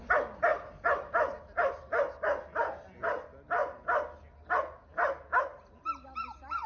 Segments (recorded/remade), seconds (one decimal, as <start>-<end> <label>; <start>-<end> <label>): 0.0-6.7 recorded